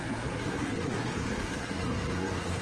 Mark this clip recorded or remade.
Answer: remade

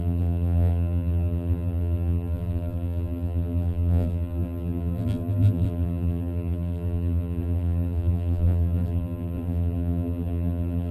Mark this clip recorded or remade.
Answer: remade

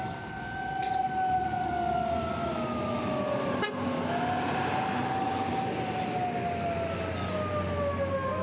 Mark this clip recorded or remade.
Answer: recorded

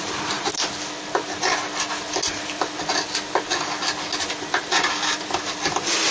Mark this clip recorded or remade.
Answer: recorded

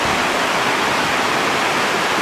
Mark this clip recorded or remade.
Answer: recorded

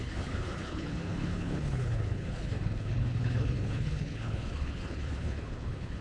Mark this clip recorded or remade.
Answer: remade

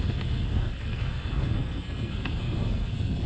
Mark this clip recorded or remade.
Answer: remade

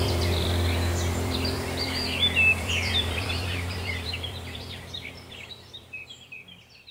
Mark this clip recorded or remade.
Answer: remade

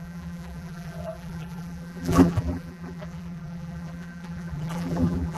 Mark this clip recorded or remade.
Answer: remade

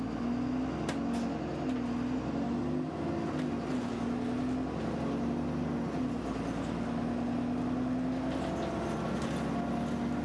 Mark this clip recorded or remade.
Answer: recorded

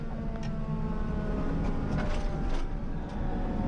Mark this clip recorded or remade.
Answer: recorded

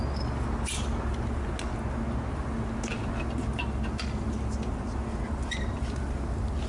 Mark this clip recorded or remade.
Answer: recorded